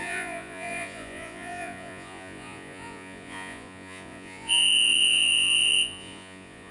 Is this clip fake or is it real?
fake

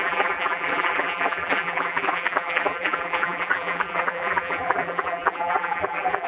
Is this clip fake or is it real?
fake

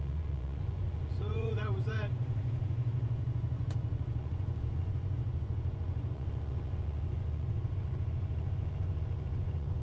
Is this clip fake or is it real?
fake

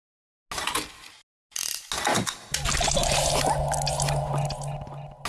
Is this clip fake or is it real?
real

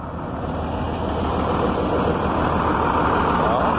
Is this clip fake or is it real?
real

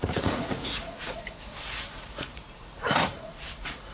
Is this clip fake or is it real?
fake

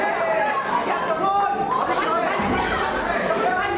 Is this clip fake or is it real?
real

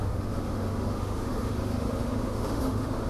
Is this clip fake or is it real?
fake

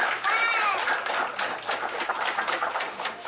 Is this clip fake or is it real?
fake